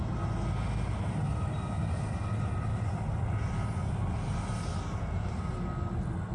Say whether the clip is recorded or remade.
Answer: recorded